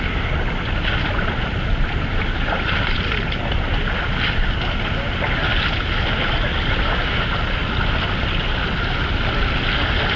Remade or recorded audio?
recorded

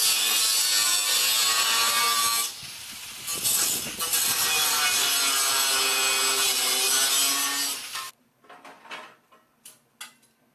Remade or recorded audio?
recorded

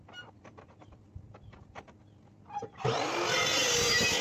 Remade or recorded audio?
recorded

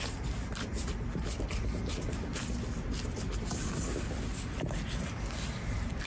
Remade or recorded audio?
recorded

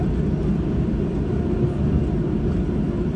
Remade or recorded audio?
recorded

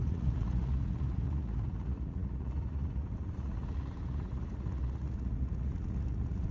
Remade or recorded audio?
remade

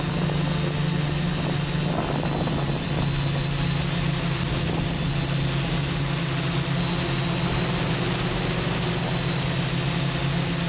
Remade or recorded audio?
recorded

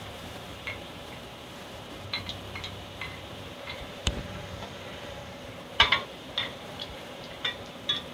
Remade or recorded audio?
remade